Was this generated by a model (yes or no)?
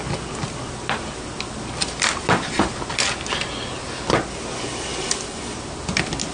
no